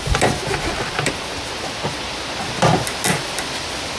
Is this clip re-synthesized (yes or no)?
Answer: no